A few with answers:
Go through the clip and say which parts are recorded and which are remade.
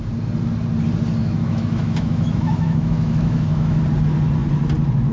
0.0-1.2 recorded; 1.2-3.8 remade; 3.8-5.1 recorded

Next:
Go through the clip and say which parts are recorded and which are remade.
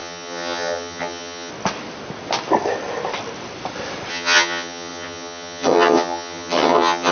0.0-1.5 remade; 1.5-4.1 recorded; 4.1-7.1 remade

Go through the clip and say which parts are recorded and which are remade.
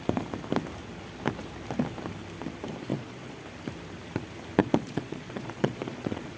0.0-2.9 recorded; 2.9-3.4 remade; 3.4-4.6 recorded; 4.6-6.4 remade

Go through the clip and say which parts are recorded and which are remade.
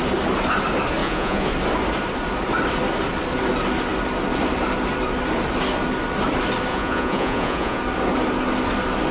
0.0-1.0 recorded; 1.0-1.5 remade; 1.5-6.7 recorded; 6.7-7.8 remade; 7.8-9.1 recorded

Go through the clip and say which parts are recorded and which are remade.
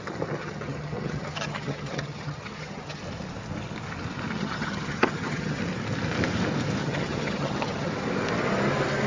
0.0-0.4 recorded; 0.4-3.0 remade; 3.0-4.4 recorded; 4.4-5.6 remade; 5.6-6.8 recorded; 6.8-7.9 remade; 7.9-9.1 recorded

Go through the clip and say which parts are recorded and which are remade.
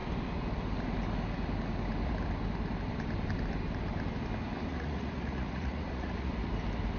0.0-4.7 recorded; 4.7-6.3 remade; 6.3-7.0 recorded